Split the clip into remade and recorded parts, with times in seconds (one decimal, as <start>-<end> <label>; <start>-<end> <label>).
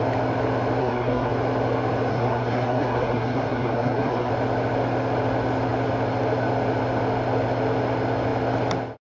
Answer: 0.0-0.8 recorded; 0.8-1.3 remade; 1.3-2.1 recorded; 2.1-4.3 remade; 4.3-9.2 recorded